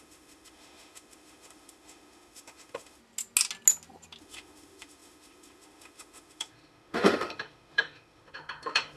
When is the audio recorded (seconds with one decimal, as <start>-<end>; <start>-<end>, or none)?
3.0-4.2